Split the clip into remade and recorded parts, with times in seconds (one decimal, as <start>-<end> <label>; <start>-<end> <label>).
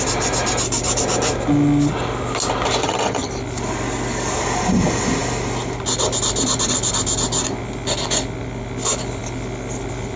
0.0-2.8 recorded; 2.8-3.3 remade; 3.3-10.2 recorded